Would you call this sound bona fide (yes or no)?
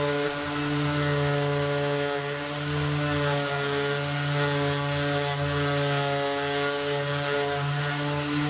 yes